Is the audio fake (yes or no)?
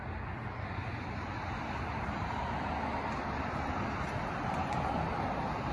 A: no